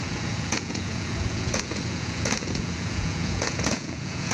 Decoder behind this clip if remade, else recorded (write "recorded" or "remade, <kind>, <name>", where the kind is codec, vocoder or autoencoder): remade, vocoder, Vocos